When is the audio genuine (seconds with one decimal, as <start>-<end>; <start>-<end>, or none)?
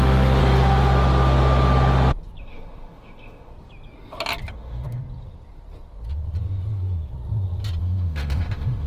0.4-2.4; 3.5-4.5; 5.0-7.8